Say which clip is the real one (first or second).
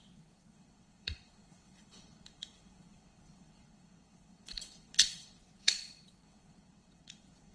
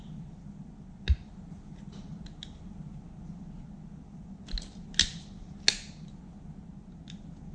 second